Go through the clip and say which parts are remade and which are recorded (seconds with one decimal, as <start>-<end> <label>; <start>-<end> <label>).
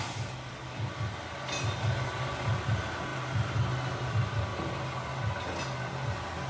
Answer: 0.0-6.5 recorded